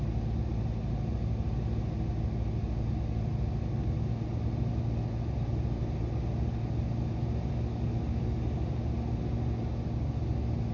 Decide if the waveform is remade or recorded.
recorded